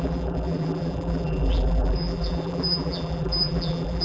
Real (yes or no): no